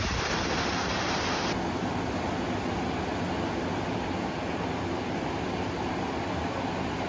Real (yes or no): yes